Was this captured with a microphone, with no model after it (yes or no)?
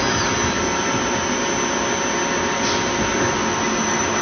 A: yes